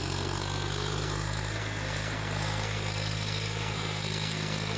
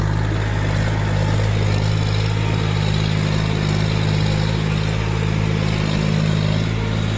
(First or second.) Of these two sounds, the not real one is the first